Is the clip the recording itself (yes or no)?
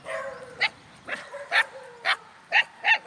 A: yes